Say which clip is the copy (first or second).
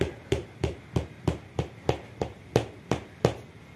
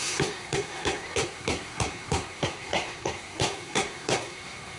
second